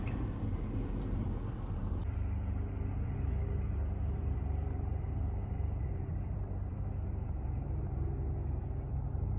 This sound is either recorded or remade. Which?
remade